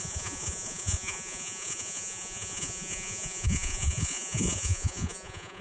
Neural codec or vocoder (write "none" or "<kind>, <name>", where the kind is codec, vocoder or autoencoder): vocoder, Vocos